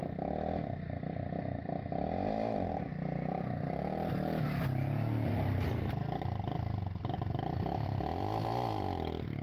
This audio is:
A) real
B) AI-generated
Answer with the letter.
B